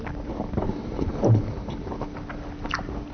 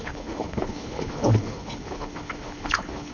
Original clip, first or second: first